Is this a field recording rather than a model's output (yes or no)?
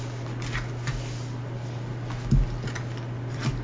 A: yes